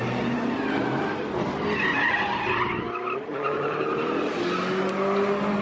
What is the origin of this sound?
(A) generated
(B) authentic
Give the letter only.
B